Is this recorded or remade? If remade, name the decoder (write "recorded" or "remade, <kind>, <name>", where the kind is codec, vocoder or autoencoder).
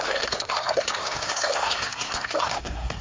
remade, codec, SNAC